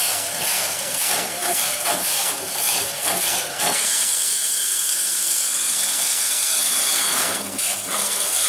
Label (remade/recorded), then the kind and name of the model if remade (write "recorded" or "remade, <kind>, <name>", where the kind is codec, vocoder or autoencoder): remade, codec, SNAC